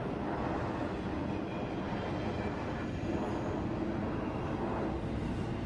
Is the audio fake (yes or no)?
no